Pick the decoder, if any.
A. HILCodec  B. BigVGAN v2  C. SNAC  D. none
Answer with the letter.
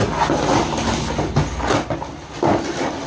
D